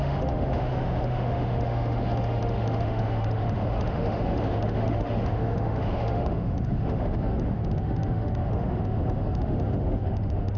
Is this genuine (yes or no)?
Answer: no